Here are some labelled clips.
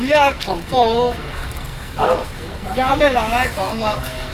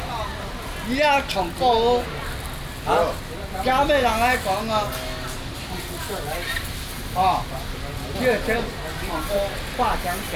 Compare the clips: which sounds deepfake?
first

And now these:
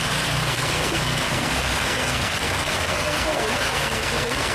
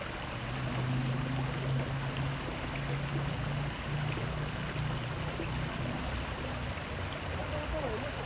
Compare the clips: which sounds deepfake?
first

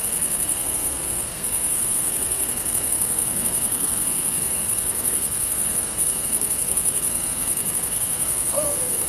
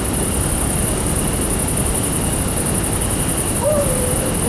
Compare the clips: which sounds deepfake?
first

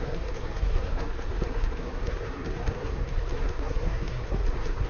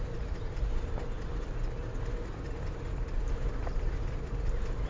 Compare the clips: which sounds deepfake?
first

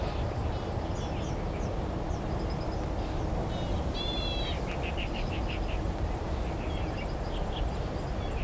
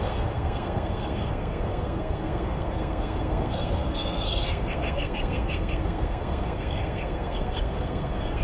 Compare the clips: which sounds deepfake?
second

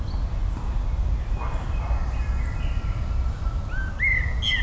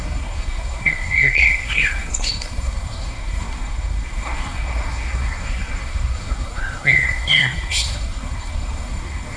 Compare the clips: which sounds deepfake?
second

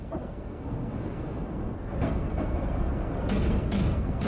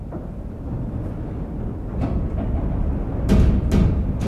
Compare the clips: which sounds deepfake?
first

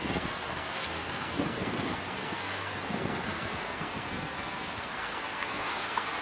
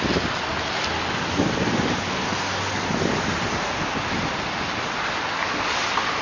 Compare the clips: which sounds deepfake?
first